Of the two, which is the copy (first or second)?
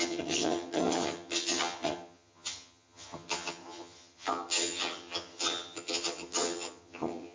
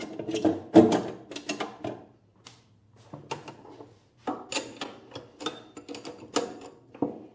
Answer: first